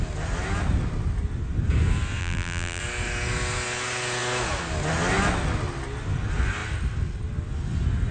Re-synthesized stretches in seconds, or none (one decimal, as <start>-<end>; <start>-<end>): 2.2-2.8